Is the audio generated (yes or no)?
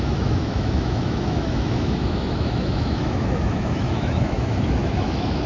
yes